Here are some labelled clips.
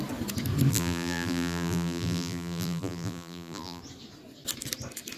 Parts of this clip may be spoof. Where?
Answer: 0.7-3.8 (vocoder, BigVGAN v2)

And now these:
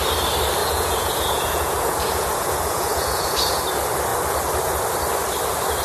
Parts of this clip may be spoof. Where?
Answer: 0.6-3.6 (vocoder, Vocos)